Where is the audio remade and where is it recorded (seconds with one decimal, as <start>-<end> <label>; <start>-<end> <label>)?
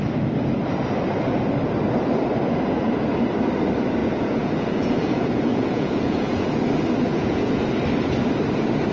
0.0-4.0 recorded; 4.0-6.6 remade; 6.6-7.1 recorded; 7.1-7.7 remade; 7.7-8.9 recorded